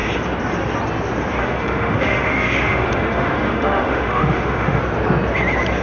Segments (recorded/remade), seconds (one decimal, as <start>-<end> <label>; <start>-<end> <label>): 0.0-1.4 recorded; 1.4-4.8 remade; 4.8-5.8 recorded